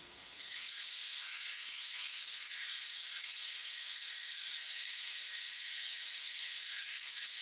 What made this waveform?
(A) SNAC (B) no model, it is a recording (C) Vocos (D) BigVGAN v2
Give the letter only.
A